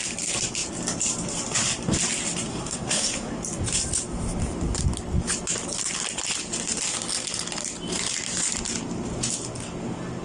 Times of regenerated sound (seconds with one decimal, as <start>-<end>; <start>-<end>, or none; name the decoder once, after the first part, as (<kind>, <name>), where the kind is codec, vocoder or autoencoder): 2.5-3.3 (codec, SNAC)